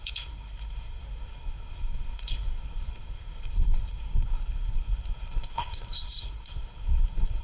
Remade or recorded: remade